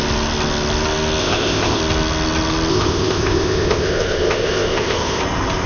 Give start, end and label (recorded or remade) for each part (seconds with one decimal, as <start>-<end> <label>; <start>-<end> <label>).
0.0-1.2 recorded; 1.2-1.8 remade; 1.8-2.7 recorded; 2.7-5.2 remade; 5.2-5.7 recorded